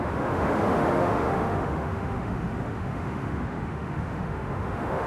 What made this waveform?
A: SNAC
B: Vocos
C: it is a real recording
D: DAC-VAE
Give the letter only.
D